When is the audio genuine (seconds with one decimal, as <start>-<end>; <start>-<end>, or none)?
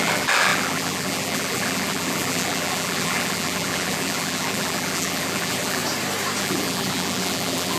5.8-6.4